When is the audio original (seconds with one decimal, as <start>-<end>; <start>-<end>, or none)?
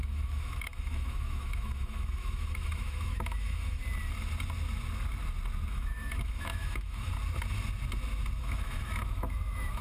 3.8-5.7; 7.1-8.4